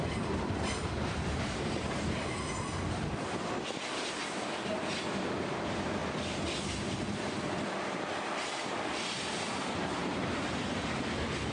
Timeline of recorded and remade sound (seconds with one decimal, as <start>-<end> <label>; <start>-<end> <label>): 0.0-10.0 remade; 10.0-10.8 recorded; 10.8-11.5 remade